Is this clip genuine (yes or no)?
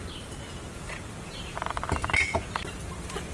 yes